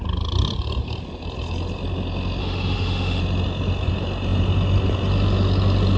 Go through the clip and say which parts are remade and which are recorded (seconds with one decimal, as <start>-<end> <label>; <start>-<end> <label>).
0.0-2.4 recorded; 2.4-3.2 remade; 3.2-6.0 recorded